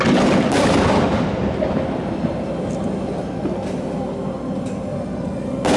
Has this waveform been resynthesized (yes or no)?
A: no